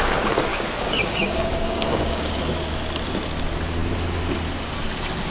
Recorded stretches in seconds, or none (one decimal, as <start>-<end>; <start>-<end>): 0.0-0.5; 2.3-5.3